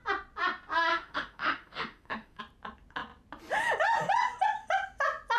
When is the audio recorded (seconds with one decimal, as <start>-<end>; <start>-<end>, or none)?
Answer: 0.0-0.9; 2.4-5.4